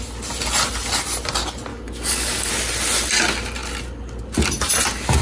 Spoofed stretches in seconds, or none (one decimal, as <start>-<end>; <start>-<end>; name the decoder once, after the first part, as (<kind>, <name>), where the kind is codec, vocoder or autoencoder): 1.7-2.5 (codec, DAC)